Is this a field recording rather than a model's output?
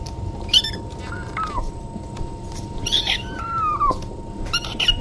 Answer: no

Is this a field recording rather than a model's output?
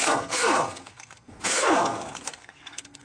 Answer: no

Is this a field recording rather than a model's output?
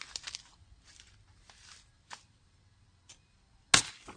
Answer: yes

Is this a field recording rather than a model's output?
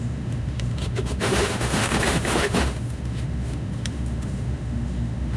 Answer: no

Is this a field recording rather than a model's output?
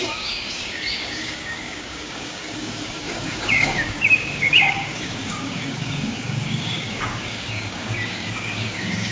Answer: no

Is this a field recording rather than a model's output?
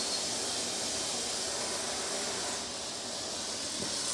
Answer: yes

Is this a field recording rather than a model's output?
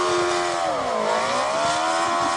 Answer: yes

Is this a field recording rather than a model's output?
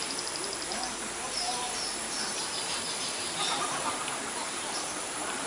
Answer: no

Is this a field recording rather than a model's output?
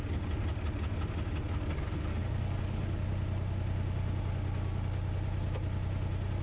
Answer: yes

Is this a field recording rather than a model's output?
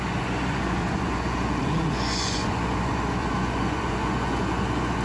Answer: no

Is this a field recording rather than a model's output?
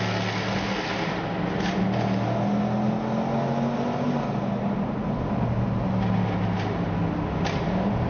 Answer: yes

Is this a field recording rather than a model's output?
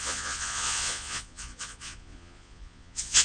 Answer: no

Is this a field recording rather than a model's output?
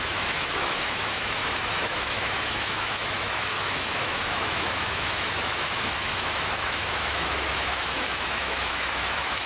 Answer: no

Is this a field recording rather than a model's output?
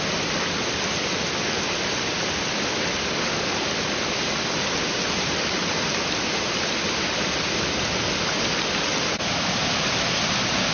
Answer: yes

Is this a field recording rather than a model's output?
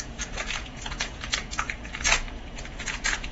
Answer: no